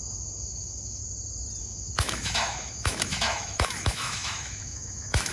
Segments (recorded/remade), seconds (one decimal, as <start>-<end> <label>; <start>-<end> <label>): 0.0-1.0 remade; 1.0-1.6 recorded; 1.6-5.3 remade